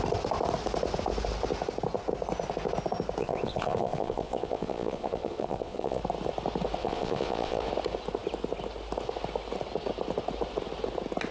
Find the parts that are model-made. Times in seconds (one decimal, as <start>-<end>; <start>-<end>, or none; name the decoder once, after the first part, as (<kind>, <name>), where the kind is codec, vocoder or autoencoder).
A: 3.2-6.0 (vocoder, Vocos); 6.8-7.7